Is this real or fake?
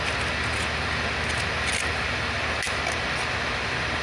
real